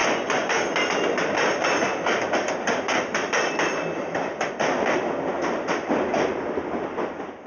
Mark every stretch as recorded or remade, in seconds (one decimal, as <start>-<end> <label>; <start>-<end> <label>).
0.0-0.6 remade; 0.6-7.5 recorded